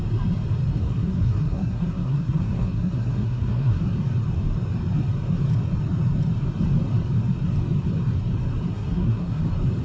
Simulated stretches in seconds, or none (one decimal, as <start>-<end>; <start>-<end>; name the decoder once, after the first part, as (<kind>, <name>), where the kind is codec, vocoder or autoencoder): 0.7-3.8 (codec, SNAC); 8.7-9.4